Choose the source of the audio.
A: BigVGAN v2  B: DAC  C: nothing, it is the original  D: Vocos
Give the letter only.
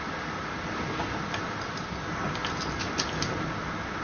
C